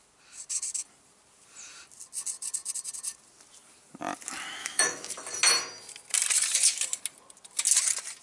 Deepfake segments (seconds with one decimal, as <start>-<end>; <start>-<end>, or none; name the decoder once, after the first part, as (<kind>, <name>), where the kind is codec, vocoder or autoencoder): 4.6-5.1 (autoencoder, DAC-VAE)